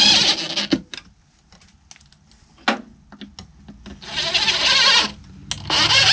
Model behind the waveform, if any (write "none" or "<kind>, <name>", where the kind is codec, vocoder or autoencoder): none